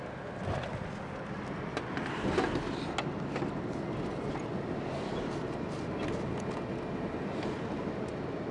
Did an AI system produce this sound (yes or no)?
no